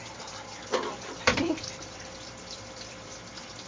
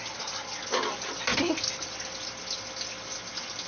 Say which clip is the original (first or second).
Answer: second